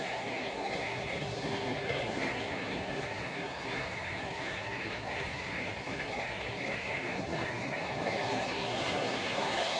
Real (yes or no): no